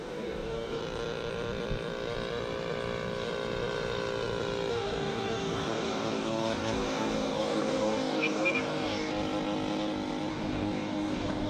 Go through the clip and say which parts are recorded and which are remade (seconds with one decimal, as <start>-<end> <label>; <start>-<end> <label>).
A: 0.0-0.8 remade; 0.8-4.7 recorded; 4.7-9.1 remade; 9.1-10.3 recorded; 10.3-11.5 remade